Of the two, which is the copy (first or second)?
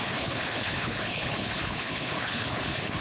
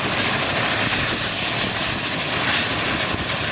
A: first